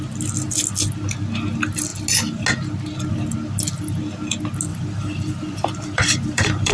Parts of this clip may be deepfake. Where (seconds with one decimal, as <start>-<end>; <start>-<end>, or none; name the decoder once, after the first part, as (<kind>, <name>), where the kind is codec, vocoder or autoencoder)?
4.7-6.7 (vocoder, BigVGAN v2)